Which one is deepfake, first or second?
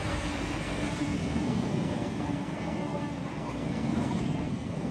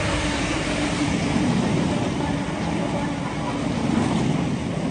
first